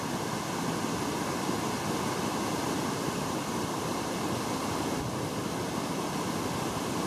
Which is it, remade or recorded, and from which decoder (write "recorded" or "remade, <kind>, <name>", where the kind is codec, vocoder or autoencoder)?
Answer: recorded